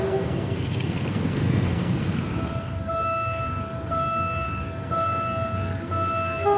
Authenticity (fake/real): fake